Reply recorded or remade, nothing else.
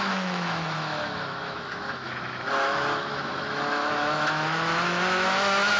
remade